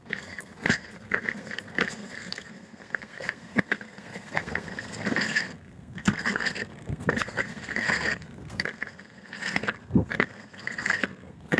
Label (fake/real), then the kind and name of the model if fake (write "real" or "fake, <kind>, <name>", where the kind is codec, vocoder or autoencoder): fake, codec, SNAC